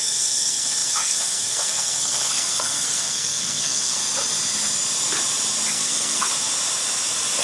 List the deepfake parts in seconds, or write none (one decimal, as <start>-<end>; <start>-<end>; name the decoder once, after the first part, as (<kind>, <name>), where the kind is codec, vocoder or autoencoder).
0.0-4.0 (codec, SNAC); 5.7-6.3